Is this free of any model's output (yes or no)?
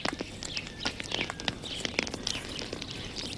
yes